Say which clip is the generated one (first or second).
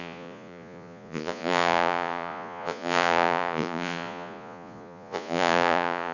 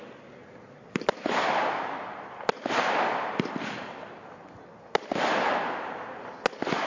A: first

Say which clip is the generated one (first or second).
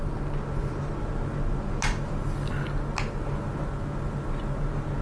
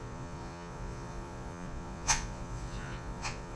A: second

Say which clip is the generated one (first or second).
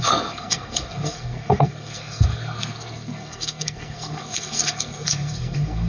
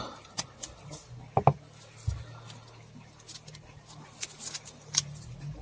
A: first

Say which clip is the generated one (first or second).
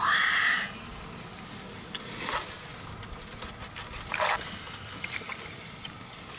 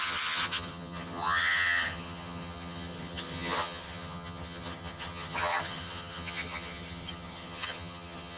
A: second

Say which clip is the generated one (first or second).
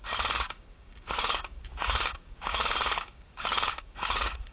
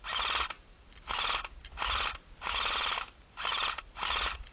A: first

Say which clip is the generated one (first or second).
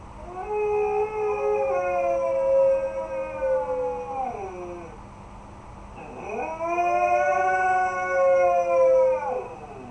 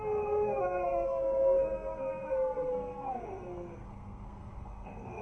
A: second